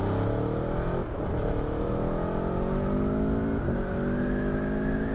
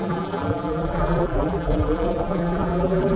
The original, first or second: first